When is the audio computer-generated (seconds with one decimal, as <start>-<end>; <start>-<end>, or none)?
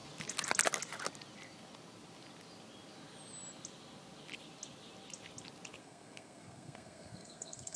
5.8-7.8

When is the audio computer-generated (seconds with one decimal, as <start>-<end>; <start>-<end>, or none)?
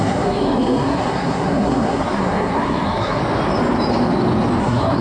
0.0-3.2; 4.6-5.0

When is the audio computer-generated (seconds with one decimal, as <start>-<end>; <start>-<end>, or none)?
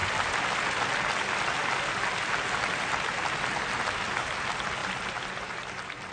none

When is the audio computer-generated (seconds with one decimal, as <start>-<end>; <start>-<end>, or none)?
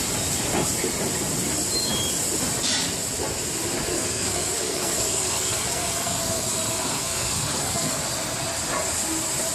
3.9-8.0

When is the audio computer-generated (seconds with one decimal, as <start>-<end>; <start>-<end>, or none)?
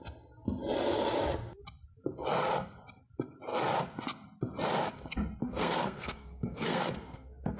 5.4-7.6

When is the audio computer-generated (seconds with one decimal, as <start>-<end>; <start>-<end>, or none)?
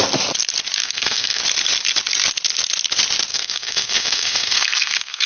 0.8-1.4; 3.3-5.3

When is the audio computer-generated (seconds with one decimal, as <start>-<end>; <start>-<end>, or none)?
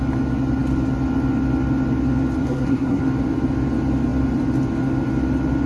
2.4-3.0